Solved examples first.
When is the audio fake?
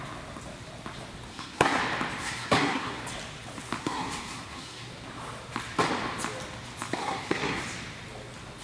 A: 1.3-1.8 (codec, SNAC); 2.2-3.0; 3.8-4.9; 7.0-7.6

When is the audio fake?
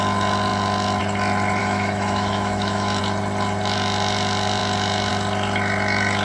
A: 1.6-3.0 (autoencoder, DAC-VAE)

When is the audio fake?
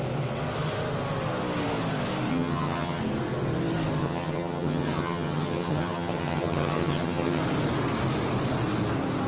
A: 2.3-3.0 (vocoder, HiFi-GAN); 4.0-7.4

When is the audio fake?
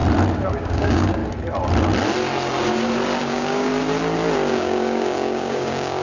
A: 0.5-1.2 (codec, DAC); 3.2-3.7; 4.5-6.0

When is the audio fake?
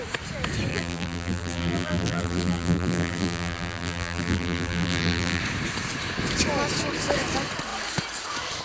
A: 0.7-5.4 (vocoder, BigVGAN v2)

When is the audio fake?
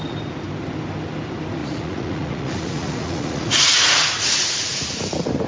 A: 1.6-4.9 (vocoder, Vocos)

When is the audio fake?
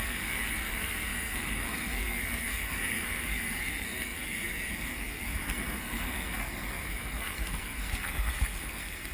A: 0.0-9.1 (codec, SNAC)